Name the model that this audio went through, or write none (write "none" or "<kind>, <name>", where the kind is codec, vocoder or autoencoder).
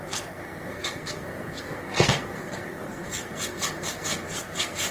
codec, SNAC